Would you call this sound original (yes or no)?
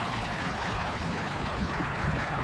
no